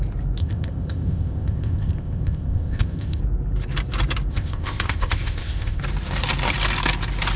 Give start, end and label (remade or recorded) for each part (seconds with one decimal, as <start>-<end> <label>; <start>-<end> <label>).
0.0-0.4 recorded; 0.4-3.2 remade; 3.2-4.3 recorded; 4.3-5.8 remade; 5.8-7.4 recorded